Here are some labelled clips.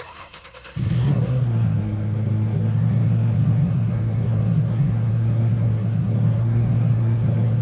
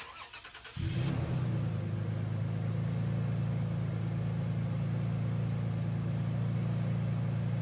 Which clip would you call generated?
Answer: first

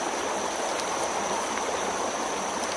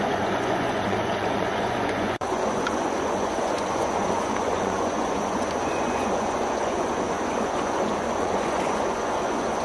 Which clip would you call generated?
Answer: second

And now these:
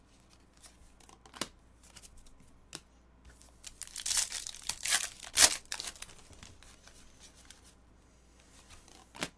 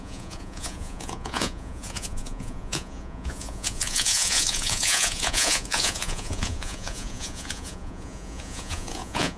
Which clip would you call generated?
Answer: second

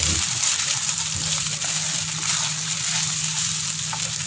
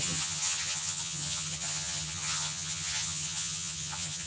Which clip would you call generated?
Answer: second